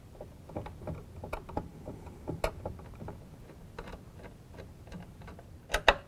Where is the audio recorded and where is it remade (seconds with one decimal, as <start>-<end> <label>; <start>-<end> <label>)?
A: 0.0-6.1 recorded